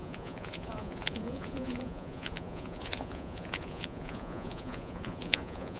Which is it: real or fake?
fake